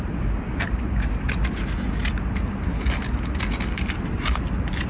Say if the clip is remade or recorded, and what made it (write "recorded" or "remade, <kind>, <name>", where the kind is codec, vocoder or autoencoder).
recorded